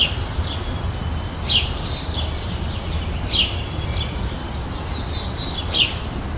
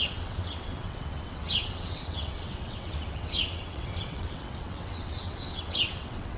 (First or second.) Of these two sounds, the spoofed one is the second